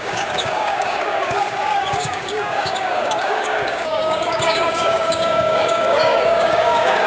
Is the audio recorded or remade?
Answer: remade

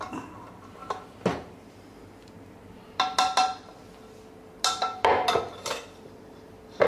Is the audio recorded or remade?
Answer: recorded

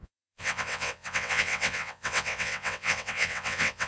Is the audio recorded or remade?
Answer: remade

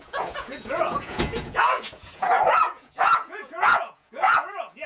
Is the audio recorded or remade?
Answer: remade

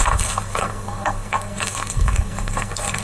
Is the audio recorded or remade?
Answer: remade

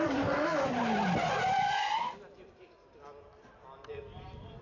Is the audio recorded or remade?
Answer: remade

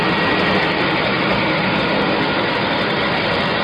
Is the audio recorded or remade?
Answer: recorded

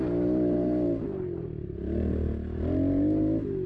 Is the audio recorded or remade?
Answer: recorded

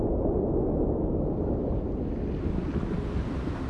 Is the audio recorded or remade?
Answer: recorded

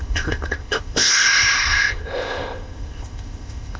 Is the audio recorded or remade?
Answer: remade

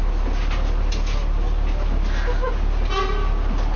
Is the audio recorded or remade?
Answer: recorded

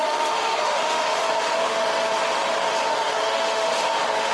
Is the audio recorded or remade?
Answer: remade